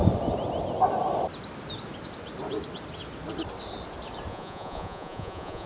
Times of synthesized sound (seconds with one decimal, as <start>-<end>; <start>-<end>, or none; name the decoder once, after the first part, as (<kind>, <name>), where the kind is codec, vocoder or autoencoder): 4.3-5.7 (vocoder, Vocos)